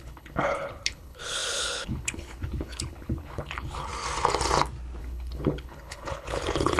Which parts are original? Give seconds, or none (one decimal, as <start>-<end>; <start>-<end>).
3.9-5.0